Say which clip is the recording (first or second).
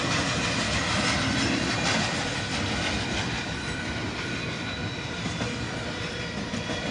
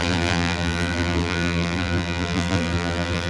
first